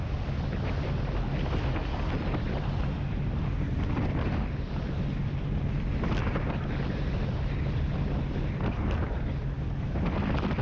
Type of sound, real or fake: real